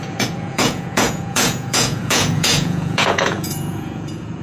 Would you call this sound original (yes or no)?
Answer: no